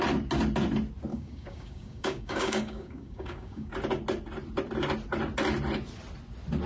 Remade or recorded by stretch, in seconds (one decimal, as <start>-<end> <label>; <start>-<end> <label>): 0.0-1.1 recorded; 1.1-3.7 remade; 3.7-6.7 recorded